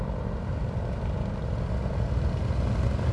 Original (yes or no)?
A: yes